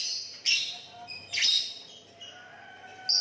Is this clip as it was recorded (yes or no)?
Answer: yes